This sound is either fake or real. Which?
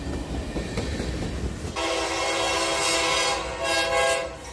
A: real